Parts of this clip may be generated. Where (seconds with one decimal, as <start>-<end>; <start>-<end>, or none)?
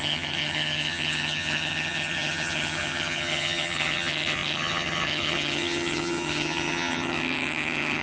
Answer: 0.0-8.0